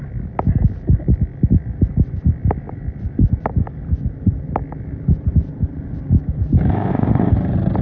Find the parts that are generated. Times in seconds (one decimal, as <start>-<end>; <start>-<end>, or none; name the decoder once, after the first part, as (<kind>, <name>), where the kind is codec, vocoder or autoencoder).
6.7-7.3 (codec, ZipCodec)